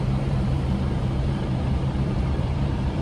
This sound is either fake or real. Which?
fake